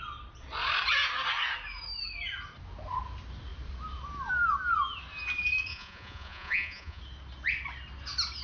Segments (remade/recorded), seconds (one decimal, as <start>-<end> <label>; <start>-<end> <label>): 0.0-5.7 recorded; 5.7-7.0 remade; 7.0-8.4 recorded